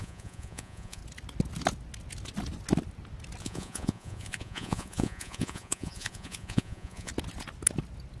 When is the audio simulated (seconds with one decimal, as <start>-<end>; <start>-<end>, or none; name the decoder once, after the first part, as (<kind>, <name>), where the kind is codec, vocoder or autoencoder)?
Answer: 0.0-1.0 (vocoder, Vocos); 3.4-7.1